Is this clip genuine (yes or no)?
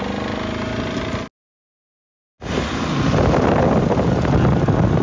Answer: yes